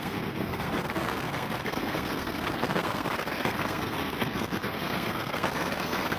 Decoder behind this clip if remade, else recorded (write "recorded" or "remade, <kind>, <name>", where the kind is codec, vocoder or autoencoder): remade, codec, SNAC